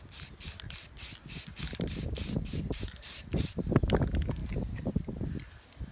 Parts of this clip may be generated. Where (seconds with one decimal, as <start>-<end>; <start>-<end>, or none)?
1.5-3.7; 4.4-5.2